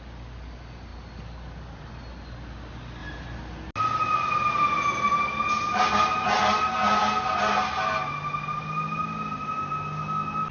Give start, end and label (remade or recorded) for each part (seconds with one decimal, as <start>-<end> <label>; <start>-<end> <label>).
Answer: 0.0-10.5 recorded